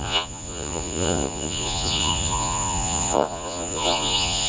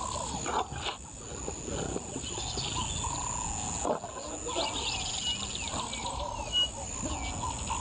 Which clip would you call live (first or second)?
second